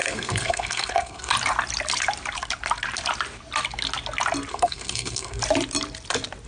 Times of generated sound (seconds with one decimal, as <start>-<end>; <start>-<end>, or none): 0.0-1.3; 4.5-5.4